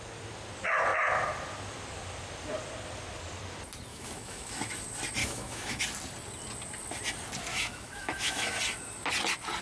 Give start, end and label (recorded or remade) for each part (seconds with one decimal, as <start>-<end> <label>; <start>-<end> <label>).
0.0-3.9 recorded; 3.9-4.7 remade; 4.7-5.2 recorded; 5.2-5.8 remade; 5.8-7.5 recorded; 7.5-8.6 remade; 8.6-9.6 recorded